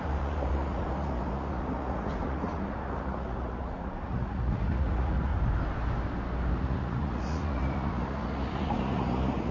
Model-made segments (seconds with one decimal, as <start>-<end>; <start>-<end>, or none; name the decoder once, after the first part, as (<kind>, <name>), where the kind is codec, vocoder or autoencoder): 0.0-5.3 (vocoder, Vocos); 6.5-9.5